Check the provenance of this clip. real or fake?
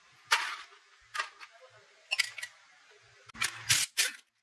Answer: real